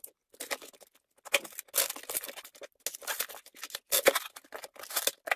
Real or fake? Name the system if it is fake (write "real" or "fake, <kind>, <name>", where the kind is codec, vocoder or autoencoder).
real